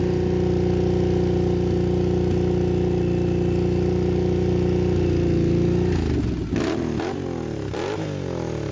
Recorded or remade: recorded